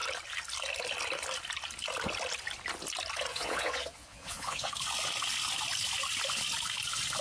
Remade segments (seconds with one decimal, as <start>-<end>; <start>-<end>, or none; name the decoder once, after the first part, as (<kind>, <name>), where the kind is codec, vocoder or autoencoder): 3.3-4.7 (vocoder, Vocos)